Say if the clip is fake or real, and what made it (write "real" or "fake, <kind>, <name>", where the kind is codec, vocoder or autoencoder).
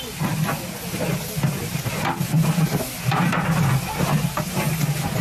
real